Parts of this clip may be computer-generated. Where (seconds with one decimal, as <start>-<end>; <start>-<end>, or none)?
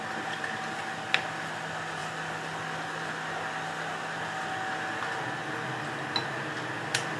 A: none